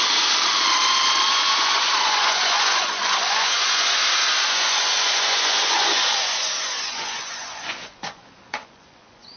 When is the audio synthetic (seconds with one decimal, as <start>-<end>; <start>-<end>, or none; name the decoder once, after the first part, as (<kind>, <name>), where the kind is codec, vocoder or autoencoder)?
1.3-4.0 (vocoder, Vocos); 4.5-9.4